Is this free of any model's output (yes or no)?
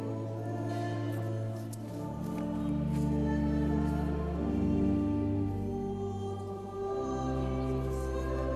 yes